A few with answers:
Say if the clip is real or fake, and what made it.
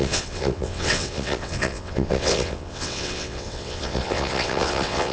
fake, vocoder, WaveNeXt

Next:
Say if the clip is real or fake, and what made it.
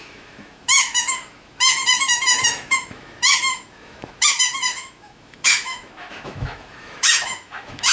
fake, autoencoder, DAC-VAE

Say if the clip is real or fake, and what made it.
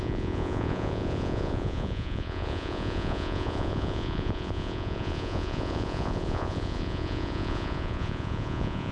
fake, vocoder, Vocos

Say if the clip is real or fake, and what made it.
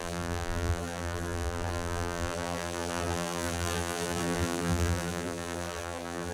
fake, vocoder, BigVGAN v2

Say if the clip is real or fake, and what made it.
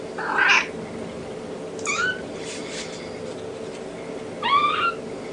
real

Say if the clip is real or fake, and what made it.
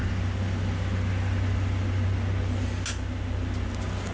real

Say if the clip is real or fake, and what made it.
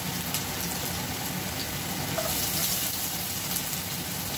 real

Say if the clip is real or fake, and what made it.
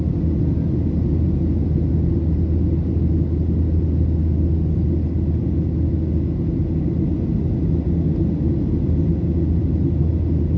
real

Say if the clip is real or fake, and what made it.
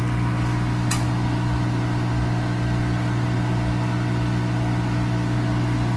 real